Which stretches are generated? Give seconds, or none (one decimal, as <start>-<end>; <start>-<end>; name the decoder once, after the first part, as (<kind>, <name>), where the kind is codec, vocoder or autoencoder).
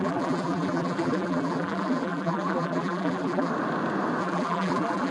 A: 0.0-3.5 (vocoder, BigVGAN v2); 4.2-5.1